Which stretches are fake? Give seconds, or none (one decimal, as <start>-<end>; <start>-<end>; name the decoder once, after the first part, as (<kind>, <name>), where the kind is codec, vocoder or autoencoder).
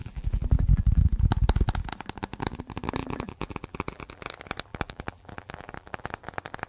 0.0-1.0 (vocoder, BigVGAN v2); 3.0-4.3; 4.7-6.1